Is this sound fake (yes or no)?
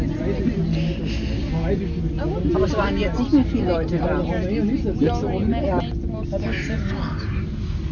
no